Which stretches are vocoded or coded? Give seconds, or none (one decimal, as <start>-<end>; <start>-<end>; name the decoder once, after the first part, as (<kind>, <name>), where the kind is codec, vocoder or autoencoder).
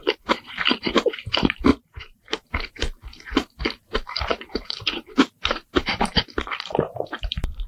0.0-6.1 (vocoder, BigVGAN v2); 6.8-7.7